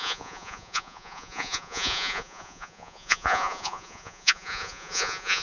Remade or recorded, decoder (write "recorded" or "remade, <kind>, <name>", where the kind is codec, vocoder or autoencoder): remade, vocoder, Vocos